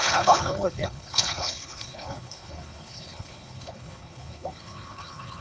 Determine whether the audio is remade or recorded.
remade